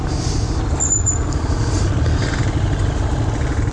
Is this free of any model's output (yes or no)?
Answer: yes